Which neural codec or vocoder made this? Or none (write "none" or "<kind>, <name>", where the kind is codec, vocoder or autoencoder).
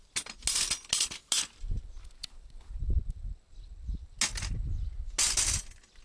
none